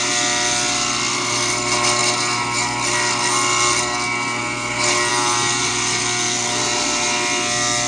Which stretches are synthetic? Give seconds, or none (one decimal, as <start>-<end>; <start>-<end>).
5.1-5.7